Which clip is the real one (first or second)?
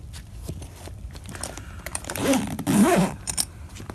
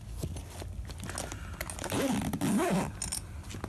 second